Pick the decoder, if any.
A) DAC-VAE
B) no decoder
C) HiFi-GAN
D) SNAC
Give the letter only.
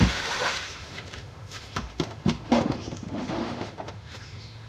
A